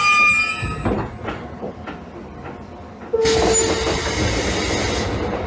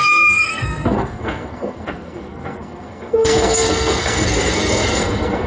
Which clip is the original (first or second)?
first